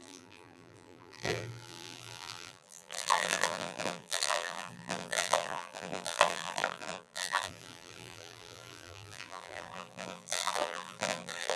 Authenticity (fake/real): fake